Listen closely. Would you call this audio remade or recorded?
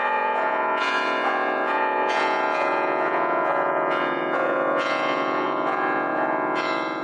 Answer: remade